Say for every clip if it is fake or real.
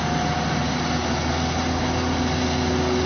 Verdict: real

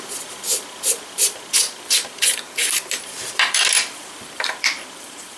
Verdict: fake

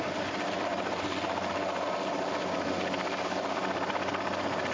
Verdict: real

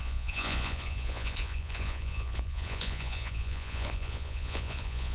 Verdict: fake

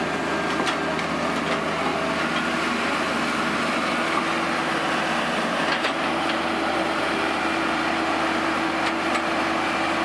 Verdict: real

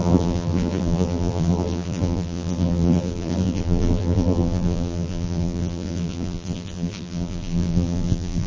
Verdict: fake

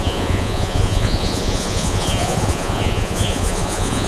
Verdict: fake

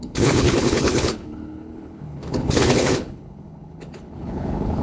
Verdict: fake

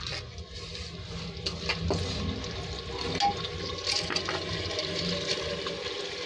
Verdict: real